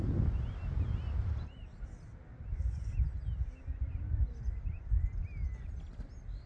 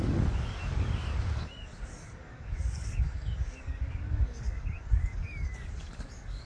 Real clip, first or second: first